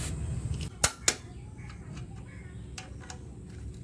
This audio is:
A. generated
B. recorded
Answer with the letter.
B